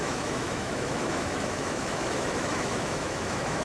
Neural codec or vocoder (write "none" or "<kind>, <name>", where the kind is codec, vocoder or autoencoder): autoencoder, DAC-VAE